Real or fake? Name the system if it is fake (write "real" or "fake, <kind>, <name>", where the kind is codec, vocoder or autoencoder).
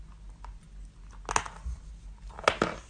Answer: real